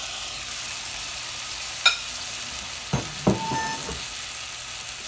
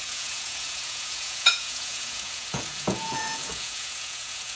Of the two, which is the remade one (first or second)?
second